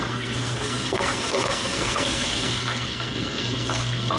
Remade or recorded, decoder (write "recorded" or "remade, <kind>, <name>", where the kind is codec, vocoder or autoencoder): remade, codec, SNAC